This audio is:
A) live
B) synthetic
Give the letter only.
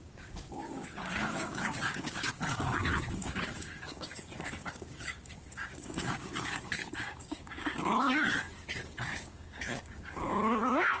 B